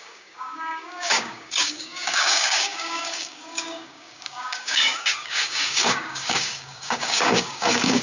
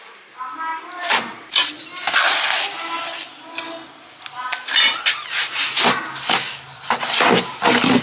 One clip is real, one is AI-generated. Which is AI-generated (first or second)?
first